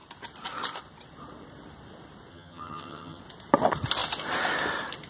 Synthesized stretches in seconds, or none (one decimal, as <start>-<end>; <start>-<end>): 2.3-3.2